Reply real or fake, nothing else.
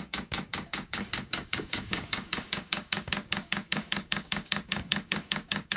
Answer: fake